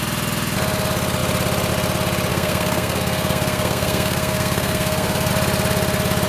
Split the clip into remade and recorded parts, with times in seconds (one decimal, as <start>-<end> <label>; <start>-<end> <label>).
0.0-2.3 recorded; 2.3-5.3 remade; 5.3-6.3 recorded